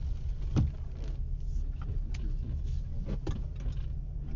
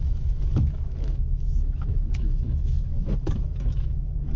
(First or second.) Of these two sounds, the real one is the first